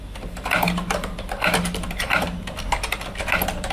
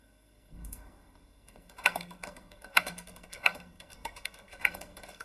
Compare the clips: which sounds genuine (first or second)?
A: first